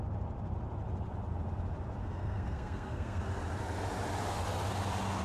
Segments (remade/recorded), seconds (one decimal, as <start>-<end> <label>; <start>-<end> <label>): 0.0-2.0 recorded; 2.0-3.2 remade; 3.2-5.2 recorded